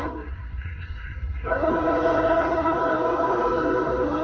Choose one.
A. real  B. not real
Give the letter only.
B